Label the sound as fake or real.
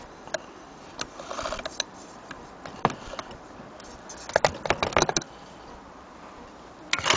real